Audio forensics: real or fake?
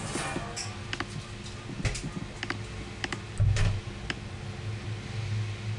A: real